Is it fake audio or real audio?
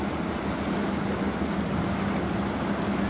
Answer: real